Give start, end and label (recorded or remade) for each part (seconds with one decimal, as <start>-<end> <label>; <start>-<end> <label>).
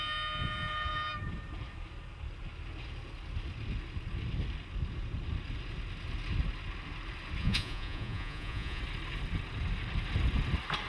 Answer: 0.0-7.4 recorded; 7.4-8.8 remade; 8.8-10.9 recorded